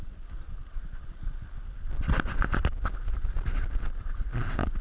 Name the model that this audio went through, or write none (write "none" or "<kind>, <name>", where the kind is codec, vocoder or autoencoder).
none